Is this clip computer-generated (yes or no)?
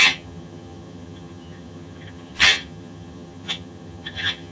yes